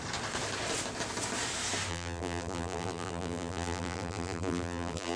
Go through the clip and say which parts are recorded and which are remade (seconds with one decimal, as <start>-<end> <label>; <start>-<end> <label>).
0.0-1.9 recorded; 1.9-5.2 remade